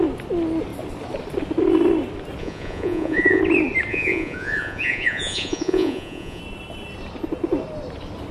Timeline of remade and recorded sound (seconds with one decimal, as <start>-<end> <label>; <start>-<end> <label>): 0.0-2.4 recorded; 2.4-3.4 remade; 3.4-3.9 recorded; 3.9-6.4 remade; 6.4-8.3 recorded